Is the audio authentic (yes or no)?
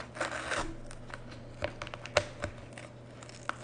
yes